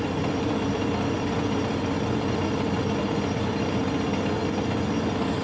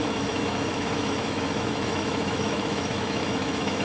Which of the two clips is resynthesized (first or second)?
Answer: second